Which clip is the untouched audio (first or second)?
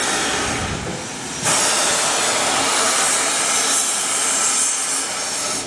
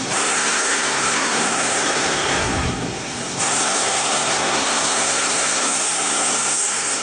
first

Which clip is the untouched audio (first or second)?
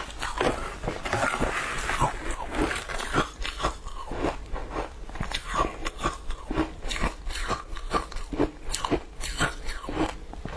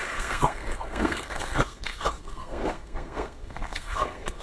first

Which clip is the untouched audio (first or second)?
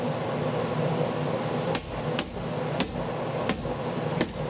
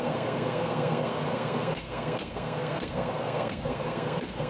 first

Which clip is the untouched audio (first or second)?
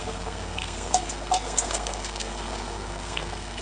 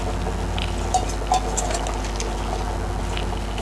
second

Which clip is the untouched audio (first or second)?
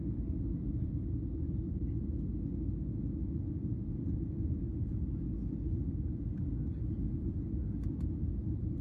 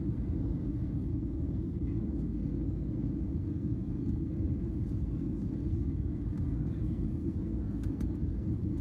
first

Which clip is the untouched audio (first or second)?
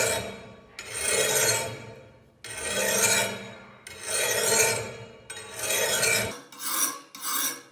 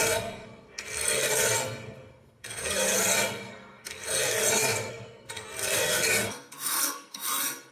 first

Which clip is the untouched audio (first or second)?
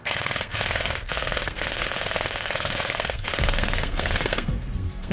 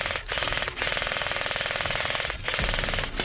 second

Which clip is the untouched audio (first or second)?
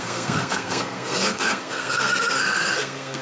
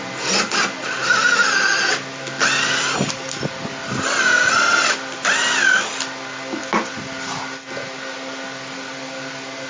second